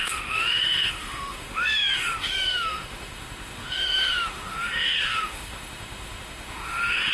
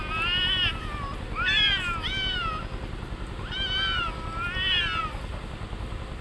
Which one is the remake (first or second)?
first